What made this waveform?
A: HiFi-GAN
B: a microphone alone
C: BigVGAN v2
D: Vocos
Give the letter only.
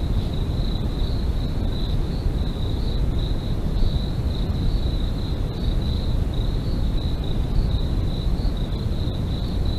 B